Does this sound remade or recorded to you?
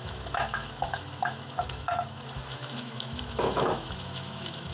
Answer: remade